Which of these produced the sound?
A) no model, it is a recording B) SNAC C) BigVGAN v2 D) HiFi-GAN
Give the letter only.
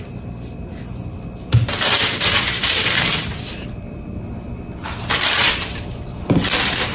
A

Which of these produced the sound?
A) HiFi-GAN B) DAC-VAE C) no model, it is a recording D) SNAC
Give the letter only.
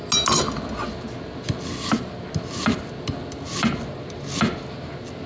C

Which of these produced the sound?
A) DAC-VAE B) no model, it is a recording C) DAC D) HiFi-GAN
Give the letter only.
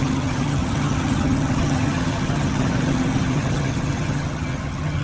D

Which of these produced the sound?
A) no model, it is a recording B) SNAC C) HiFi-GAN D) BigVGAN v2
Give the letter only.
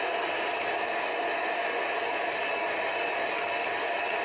A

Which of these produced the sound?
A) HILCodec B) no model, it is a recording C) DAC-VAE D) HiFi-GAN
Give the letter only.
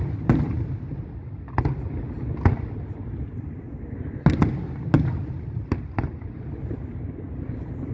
B